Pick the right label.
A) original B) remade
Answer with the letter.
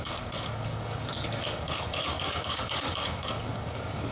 B